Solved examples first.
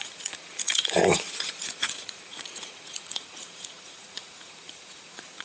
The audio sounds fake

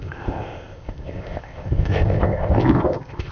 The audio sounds fake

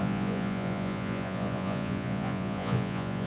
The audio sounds fake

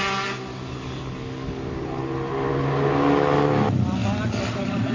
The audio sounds real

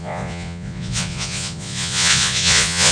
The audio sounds fake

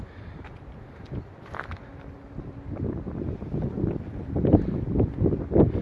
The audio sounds real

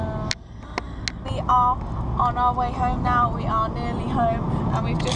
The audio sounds real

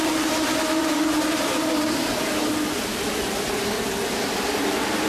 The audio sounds fake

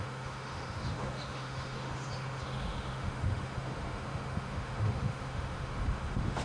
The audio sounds fake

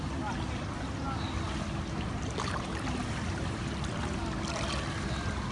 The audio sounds real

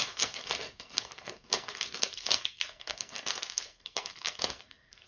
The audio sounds fake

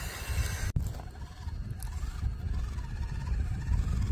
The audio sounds real